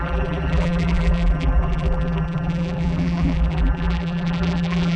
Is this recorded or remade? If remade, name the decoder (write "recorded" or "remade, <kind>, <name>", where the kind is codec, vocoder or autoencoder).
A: remade, vocoder, BigVGAN v2